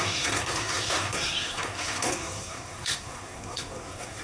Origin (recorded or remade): remade